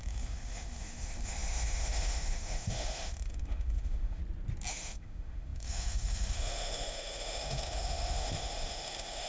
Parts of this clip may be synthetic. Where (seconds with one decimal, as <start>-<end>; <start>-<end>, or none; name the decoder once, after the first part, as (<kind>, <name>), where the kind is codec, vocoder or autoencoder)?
0.0-4.2 (autoencoder, DAC-VAE); 4.7-9.3